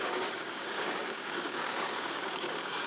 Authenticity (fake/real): fake